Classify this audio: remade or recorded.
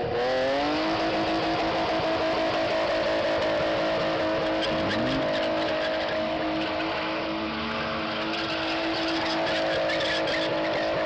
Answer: recorded